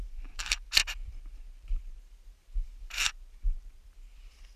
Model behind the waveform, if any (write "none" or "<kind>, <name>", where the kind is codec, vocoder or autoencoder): vocoder, BigVGAN v2